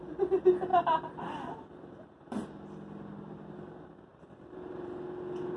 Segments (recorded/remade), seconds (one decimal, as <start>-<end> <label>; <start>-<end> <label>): 0.0-0.7 recorded; 0.7-2.5 remade; 2.5-4.1 recorded; 4.1-4.9 remade; 4.9-5.6 recorded